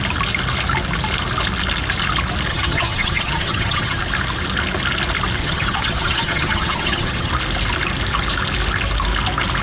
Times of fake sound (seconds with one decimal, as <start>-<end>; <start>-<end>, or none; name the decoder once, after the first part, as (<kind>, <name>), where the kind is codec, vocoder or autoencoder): 2.5-4.0 (vocoder, HiFi-GAN); 5.4-7.3